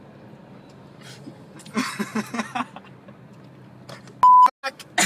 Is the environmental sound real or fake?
real